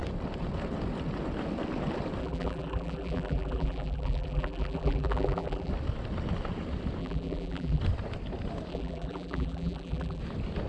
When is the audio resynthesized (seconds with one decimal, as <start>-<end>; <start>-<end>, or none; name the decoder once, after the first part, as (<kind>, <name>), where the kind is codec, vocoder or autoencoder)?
2.2-5.7 (vocoder, BigVGAN v2); 7.0-7.8; 8.7-10.2

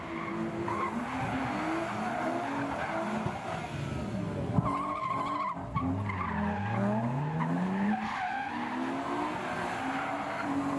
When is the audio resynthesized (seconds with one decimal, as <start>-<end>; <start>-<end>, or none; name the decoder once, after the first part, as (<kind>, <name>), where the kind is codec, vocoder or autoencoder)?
7.4-8.5 (vocoder, BigVGAN v2)